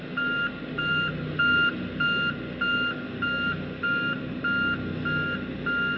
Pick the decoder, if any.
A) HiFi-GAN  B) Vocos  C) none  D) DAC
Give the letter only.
C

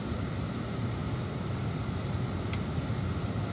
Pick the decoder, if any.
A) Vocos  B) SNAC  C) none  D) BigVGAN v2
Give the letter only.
C